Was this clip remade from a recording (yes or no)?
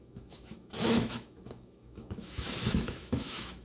yes